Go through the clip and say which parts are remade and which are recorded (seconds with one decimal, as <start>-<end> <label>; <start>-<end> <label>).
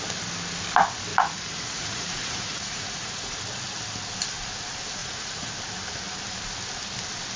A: 0.0-1.1 recorded; 1.1-3.4 remade; 3.4-5.0 recorded; 5.0-5.5 remade; 5.5-7.4 recorded